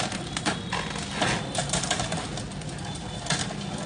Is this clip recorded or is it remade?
recorded